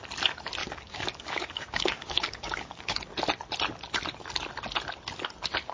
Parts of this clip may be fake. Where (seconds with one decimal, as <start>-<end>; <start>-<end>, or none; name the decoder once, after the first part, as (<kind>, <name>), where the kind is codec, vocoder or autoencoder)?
0.6-3.0 (codec, DAC)